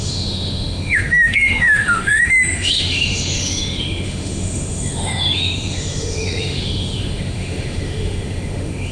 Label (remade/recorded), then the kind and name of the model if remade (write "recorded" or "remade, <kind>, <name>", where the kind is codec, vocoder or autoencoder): remade, autoencoder, DAC-VAE